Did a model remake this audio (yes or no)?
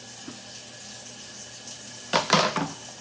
no